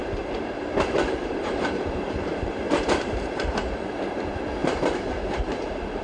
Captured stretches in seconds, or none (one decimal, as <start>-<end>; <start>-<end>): 0.0-1.2; 3.9-4.6